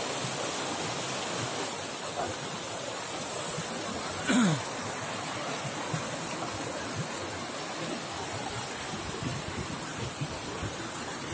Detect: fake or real real